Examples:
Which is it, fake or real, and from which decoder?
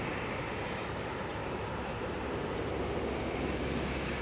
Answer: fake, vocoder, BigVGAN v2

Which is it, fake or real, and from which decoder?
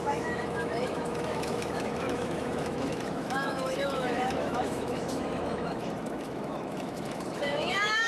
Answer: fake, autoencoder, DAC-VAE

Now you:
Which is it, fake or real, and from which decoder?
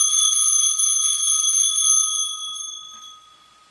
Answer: real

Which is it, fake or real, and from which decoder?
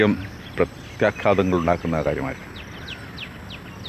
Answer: real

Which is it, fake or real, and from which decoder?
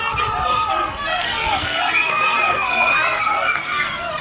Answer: fake, codec, SNAC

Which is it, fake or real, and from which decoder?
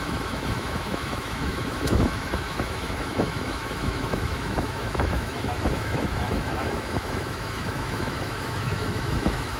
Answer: fake, autoencoder, DAC-VAE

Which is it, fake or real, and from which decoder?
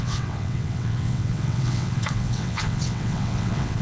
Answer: fake, vocoder, WaveNeXt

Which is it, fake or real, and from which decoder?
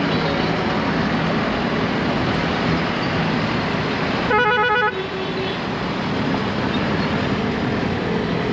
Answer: real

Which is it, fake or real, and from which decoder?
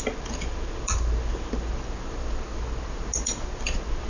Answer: real